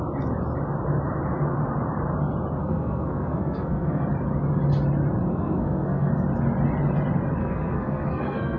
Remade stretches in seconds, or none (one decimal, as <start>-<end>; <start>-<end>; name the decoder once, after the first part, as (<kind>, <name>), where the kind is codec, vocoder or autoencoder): 2.6-4.0 (codec, SNAC); 5.3-6.1; 7.4-8.6